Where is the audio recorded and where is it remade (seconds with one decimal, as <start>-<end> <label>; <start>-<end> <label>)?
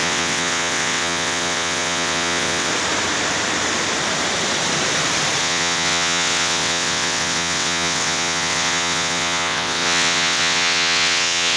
0.0-2.7 remade; 2.7-5.4 recorded; 5.4-11.6 remade